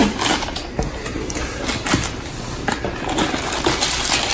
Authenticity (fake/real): real